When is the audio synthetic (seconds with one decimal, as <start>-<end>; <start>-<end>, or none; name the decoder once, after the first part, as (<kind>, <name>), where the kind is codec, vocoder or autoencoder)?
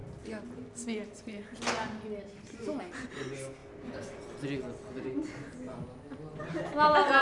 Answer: none